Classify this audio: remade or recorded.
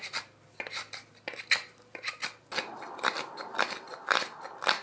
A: recorded